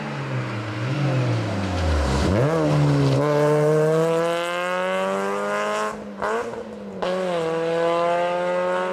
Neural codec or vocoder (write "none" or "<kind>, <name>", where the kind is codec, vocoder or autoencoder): none